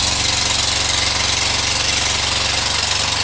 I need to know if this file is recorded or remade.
recorded